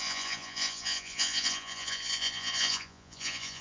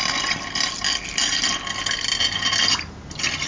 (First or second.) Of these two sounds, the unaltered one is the second